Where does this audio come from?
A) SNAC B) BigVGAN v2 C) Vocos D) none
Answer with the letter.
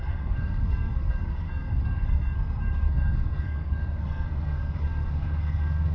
A